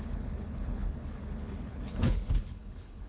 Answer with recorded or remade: remade